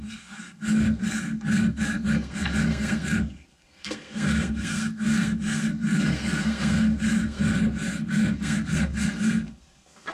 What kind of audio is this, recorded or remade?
remade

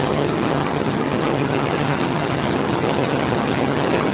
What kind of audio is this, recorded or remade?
remade